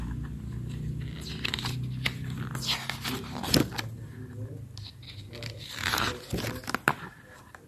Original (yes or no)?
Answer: yes